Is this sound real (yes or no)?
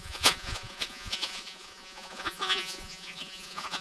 no